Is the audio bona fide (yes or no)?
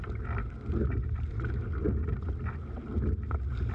yes